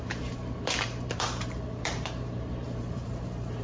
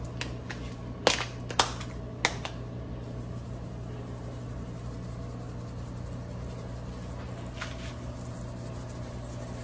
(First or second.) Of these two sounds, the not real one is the first